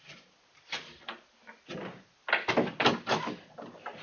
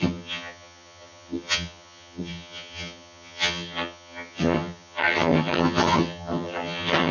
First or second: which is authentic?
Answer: first